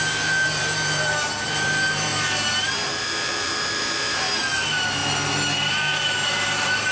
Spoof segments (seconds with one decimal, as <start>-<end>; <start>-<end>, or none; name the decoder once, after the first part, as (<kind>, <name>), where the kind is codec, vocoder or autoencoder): 0.0-5.0 (vocoder, BigVGAN v2); 5.7-6.9